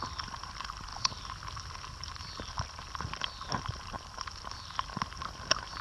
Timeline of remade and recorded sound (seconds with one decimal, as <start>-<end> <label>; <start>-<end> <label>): 0.0-5.8 recorded